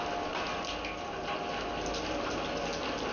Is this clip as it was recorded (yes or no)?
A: yes